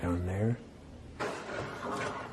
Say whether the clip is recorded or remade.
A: recorded